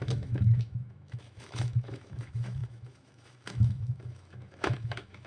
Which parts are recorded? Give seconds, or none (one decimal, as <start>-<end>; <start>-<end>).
none